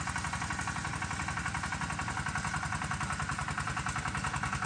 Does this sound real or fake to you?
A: real